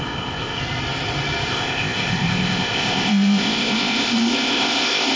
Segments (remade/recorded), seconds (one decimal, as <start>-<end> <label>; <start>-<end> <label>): 0.0-0.6 remade; 0.6-1.5 recorded; 1.5-5.2 remade